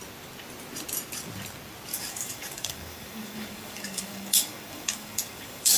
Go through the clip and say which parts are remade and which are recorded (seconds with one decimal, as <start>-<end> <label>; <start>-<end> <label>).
0.0-1.9 recorded; 1.9-5.8 remade